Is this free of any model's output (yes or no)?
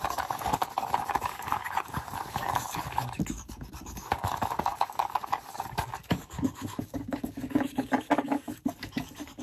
no